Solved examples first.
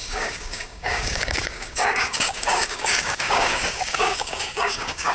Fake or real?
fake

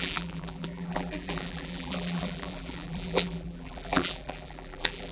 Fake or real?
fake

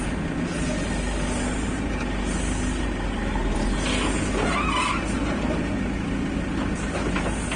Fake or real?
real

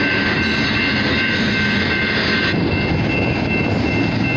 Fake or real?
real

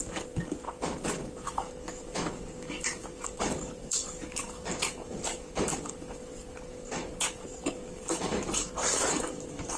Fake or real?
fake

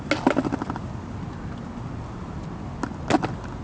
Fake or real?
real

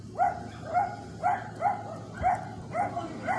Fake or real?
real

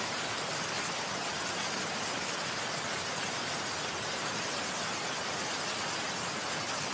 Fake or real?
real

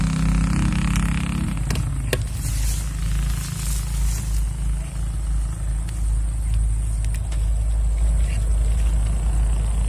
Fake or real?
real